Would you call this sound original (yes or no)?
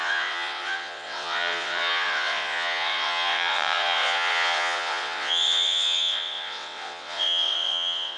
no